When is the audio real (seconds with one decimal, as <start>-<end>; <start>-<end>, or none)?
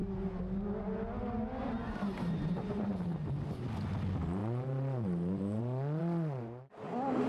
0.0-1.6; 3.0-4.4; 5.6-6.0